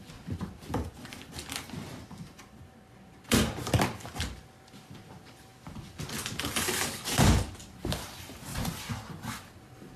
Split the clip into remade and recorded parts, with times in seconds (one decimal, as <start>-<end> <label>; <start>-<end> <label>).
0.0-8.5 remade; 8.5-9.2 recorded; 9.2-10.0 remade